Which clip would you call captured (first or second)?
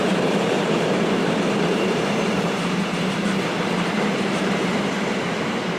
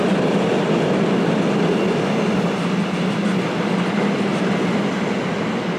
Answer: second